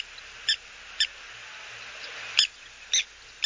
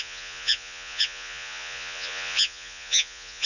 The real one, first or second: first